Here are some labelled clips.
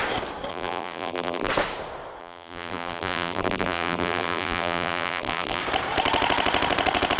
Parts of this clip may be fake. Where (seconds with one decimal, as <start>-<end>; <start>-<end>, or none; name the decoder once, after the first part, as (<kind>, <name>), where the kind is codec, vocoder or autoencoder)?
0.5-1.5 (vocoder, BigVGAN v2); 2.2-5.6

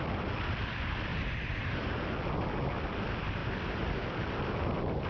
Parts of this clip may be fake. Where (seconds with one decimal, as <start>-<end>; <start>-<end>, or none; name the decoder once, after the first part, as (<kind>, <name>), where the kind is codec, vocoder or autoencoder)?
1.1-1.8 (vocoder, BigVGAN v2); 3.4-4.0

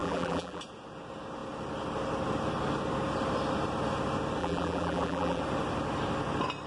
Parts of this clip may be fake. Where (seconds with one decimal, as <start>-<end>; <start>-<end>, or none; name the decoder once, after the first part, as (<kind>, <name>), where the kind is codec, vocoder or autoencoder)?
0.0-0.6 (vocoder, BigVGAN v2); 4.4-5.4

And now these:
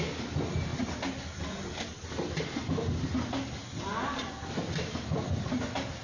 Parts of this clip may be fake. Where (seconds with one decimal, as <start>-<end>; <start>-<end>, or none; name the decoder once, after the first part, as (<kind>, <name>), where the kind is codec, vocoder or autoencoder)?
none

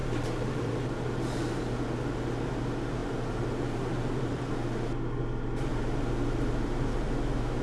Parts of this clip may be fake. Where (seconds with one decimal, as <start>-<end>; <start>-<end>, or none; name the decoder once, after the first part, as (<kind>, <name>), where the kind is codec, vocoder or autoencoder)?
0.0-1.6 (vocoder, BigVGAN v2); 3.0-4.5; 5.7-7.1

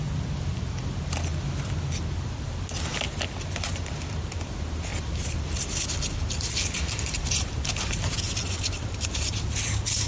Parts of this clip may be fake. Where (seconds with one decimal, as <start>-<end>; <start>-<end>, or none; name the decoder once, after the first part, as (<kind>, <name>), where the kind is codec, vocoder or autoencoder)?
4.9-8.9 (vocoder, BigVGAN v2)

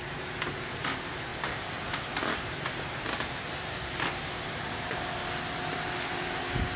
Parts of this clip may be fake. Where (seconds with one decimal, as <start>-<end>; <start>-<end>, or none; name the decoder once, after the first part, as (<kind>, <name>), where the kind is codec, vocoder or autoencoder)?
0.0-5.2 (vocoder, BigVGAN v2); 6.1-6.8